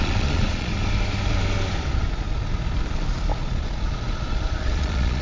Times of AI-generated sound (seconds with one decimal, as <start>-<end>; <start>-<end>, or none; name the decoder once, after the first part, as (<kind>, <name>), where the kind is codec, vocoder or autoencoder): 0.0-0.7 (vocoder, Vocos); 3.4-5.2